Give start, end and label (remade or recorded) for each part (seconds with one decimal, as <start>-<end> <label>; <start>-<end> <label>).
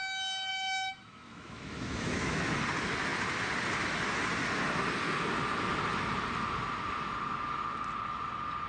0.0-0.5 recorded; 0.5-2.4 remade; 2.4-8.7 recorded